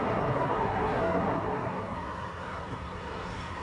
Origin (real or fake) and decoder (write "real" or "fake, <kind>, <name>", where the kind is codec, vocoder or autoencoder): fake, codec, SNAC